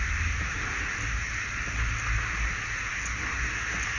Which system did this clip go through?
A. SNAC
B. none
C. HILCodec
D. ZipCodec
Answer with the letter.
B